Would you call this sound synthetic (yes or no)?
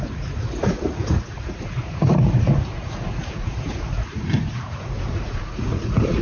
yes